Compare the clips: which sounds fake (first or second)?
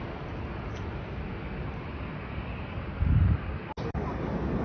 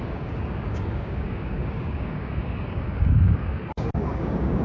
second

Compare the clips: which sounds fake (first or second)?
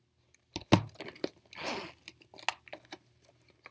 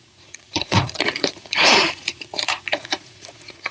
second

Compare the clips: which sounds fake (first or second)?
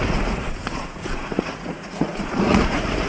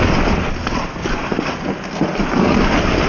first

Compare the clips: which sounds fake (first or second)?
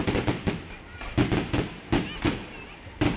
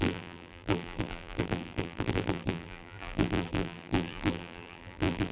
second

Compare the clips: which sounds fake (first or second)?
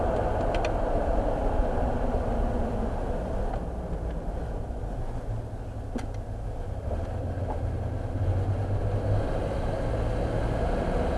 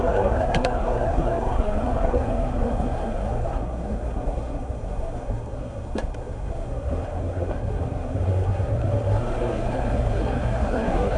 second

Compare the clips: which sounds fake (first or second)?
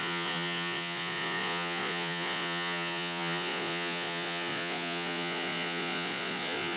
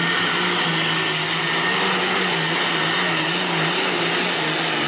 first